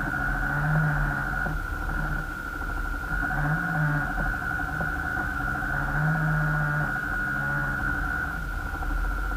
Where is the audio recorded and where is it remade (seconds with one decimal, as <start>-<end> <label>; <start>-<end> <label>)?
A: 0.0-5.1 recorded; 5.1-5.7 remade; 5.7-7.8 recorded; 7.8-8.4 remade; 8.4-9.4 recorded